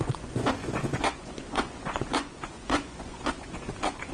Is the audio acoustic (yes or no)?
no